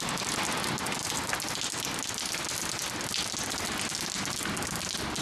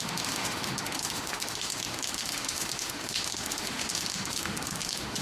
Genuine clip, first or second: first